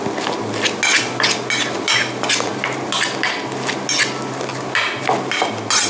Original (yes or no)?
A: yes